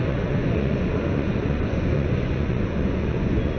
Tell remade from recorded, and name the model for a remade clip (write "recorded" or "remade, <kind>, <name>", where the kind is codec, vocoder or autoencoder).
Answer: remade, vocoder, Vocos